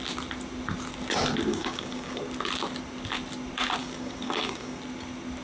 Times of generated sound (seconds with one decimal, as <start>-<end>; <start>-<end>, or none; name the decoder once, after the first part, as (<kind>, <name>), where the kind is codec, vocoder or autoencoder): 1.5-2.2 (codec, DAC); 3.8-4.8